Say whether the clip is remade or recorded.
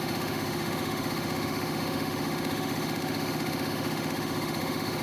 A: remade